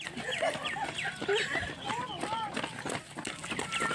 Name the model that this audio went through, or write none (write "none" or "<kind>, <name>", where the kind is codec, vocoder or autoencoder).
none